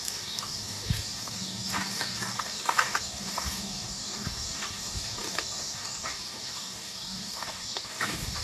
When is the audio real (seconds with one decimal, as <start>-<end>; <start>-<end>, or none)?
none